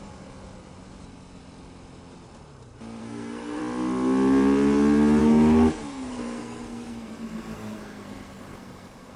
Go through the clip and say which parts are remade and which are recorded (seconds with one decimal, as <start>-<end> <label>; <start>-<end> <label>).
0.0-3.0 recorded; 3.0-3.6 remade; 3.6-5.2 recorded; 5.2-9.2 remade